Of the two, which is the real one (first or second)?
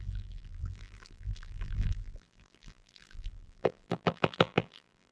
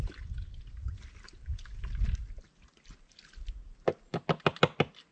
second